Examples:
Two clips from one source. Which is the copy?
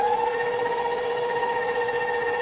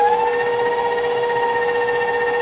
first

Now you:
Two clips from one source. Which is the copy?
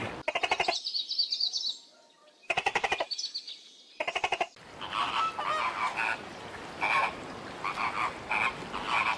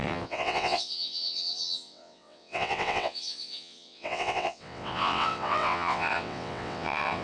second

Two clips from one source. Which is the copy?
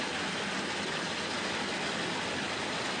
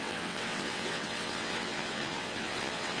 second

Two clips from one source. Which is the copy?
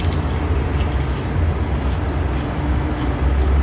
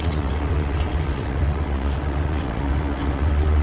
second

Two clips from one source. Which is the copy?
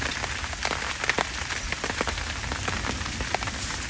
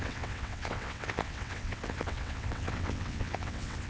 second